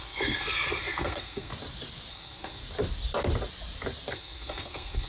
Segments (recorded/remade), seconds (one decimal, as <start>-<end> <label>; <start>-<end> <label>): 0.0-1.5 remade; 1.5-2.1 recorded; 2.1-2.6 remade; 2.6-4.1 recorded; 4.1-5.1 remade